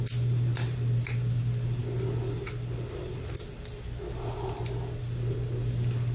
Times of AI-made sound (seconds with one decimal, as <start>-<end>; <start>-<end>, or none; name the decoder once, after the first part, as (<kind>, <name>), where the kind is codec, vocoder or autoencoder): none